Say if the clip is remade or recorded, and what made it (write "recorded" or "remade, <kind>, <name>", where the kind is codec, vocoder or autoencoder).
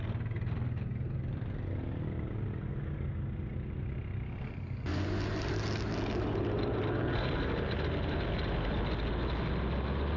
recorded